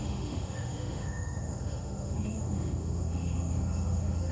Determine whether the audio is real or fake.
fake